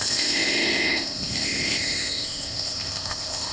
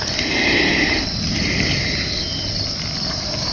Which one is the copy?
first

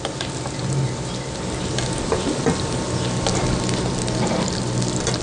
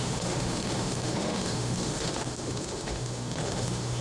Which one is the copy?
second